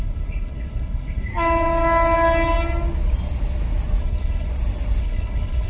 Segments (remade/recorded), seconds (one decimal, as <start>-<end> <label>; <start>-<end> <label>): 0.0-1.3 remade; 1.3-4.0 recorded; 4.0-4.5 remade; 4.5-5.0 recorded; 5.0-5.7 remade